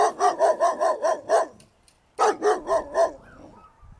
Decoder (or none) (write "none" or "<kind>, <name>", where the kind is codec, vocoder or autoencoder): none